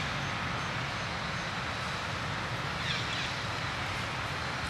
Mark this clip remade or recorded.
recorded